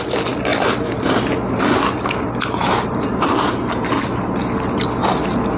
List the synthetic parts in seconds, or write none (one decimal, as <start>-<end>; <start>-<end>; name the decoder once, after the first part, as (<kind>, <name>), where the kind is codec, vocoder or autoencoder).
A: 0.5-1.0 (vocoder, BigVGAN v2); 2.6-3.9